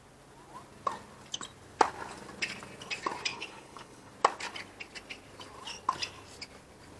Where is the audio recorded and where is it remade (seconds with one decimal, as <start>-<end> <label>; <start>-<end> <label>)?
0.0-3.3 recorded; 3.3-4.1 remade; 4.1-7.0 recorded